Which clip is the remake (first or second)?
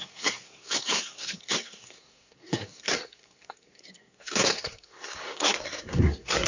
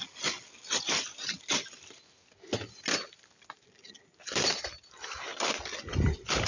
first